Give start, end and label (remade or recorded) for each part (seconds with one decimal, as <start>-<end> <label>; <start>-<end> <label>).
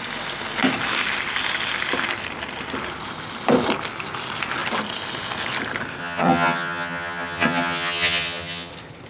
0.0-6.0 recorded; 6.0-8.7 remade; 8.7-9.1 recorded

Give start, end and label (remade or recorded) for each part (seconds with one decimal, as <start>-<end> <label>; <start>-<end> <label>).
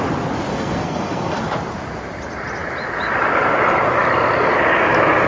0.0-0.5 recorded; 0.5-1.4 remade; 1.4-5.3 recorded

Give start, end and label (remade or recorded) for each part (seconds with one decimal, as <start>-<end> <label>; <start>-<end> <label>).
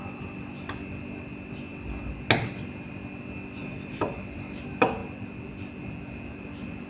0.0-3.6 recorded; 3.6-4.2 remade; 4.2-6.9 recorded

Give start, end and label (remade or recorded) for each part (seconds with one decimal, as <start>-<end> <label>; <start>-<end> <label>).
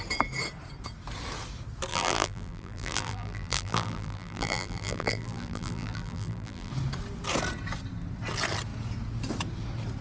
0.0-1.9 recorded; 1.9-6.7 remade; 6.7-10.0 recorded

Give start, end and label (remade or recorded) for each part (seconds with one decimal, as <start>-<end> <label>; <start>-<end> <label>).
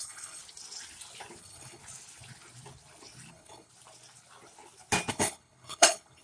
0.0-0.4 remade; 0.4-1.4 recorded; 1.4-1.8 remade; 1.8-3.3 recorded; 3.3-3.7 remade; 3.7-5.1 recorded; 5.1-6.2 remade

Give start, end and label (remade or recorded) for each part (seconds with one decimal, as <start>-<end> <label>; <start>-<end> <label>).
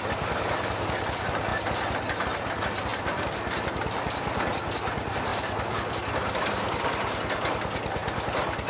0.0-1.5 remade; 1.5-2.2 recorded; 2.2-2.9 remade; 2.9-3.7 recorded; 3.7-8.0 remade; 8.0-8.7 recorded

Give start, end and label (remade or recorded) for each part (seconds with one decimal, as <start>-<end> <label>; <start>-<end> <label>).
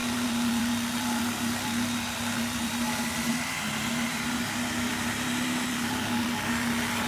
0.0-3.9 remade; 3.9-4.9 recorded; 4.9-7.1 remade